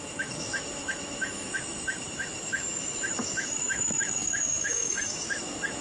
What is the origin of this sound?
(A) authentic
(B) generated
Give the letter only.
B